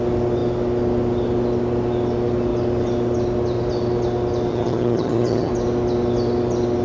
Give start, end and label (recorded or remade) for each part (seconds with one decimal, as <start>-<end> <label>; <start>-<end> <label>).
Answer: 0.0-4.5 recorded; 4.5-5.5 remade; 5.5-6.8 recorded

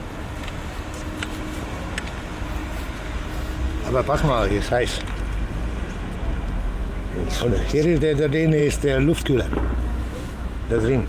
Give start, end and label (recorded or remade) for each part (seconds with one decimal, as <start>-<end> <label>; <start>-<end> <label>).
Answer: 0.0-6.8 recorded; 6.8-8.0 remade; 8.0-9.9 recorded; 9.9-11.1 remade

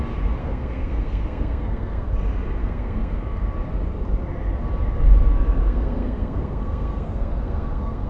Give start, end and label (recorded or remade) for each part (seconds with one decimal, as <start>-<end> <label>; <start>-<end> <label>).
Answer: 0.0-0.4 recorded; 0.4-2.1 remade; 2.1-2.6 recorded; 2.6-3.2 remade; 3.2-5.6 recorded; 5.6-8.1 remade

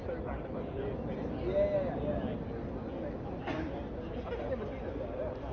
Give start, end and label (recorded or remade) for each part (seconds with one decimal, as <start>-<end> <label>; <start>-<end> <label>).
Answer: 0.0-0.8 remade; 0.8-5.5 recorded

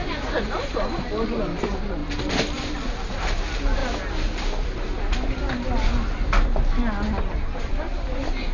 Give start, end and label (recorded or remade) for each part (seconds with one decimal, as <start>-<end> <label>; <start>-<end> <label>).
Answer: 0.0-8.5 recorded

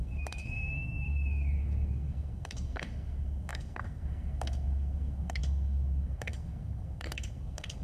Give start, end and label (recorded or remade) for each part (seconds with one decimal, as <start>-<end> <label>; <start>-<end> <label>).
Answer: 0.0-7.8 remade